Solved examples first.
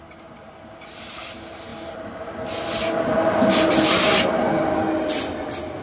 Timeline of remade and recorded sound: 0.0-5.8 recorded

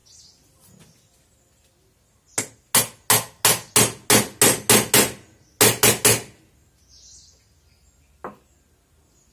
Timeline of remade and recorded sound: 0.0-9.3 recorded

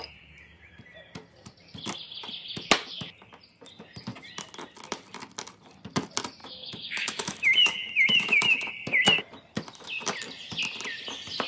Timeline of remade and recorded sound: 0.0-6.4 recorded; 6.4-8.7 remade; 8.7-11.5 recorded

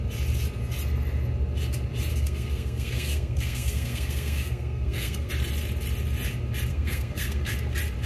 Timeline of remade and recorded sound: 0.0-2.1 recorded; 2.1-5.3 remade; 5.3-6.7 recorded; 6.7-7.5 remade; 7.5-8.1 recorded